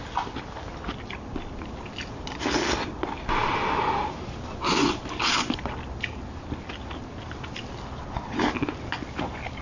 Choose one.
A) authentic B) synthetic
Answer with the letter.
A